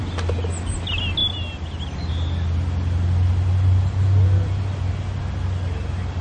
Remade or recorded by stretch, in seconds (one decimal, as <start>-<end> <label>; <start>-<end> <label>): 0.0-6.2 recorded